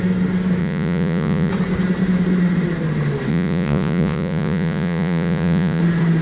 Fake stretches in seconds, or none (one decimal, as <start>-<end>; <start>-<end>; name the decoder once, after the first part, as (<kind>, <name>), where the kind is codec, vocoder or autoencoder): 0.6-1.5 (vocoder, Vocos); 3.3-5.8

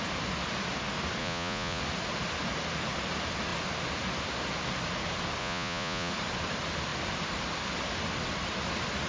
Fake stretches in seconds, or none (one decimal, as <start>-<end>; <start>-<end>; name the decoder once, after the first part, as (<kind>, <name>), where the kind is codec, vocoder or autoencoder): 1.2-1.8 (vocoder, Vocos); 5.4-6.1